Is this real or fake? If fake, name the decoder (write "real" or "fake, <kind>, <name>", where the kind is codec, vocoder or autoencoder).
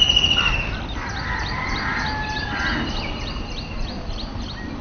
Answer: real